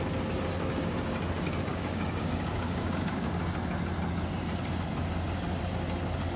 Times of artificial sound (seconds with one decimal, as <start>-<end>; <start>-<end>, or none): 1.7-3.4

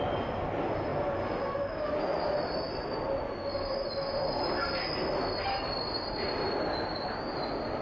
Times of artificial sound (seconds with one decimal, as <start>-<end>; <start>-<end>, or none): none

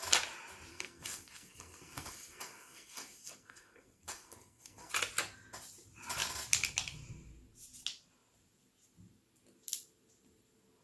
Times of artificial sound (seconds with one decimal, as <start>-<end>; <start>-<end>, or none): 0.7-4.9

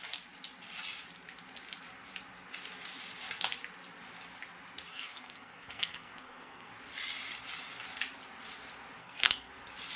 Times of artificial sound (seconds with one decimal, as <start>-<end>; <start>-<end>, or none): 4.9-6.7; 9.0-9.5

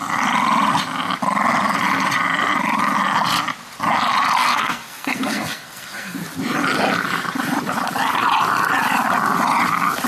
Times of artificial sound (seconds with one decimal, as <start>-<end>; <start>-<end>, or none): 4.4-6.2